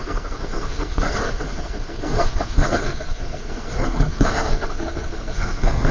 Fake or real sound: fake